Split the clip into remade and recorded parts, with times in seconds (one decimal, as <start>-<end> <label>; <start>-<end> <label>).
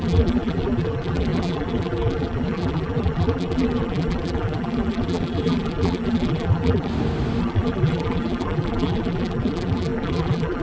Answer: 0.0-6.9 remade; 6.9-7.4 recorded; 7.4-10.6 remade